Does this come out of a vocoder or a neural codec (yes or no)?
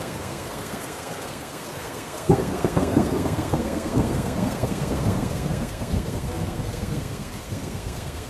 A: yes